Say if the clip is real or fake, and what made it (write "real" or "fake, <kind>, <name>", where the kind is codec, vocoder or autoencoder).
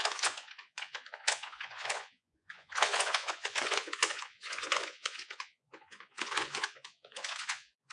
fake, vocoder, Vocos